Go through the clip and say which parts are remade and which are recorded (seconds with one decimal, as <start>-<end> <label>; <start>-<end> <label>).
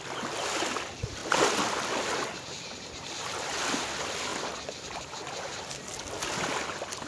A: 0.0-7.1 recorded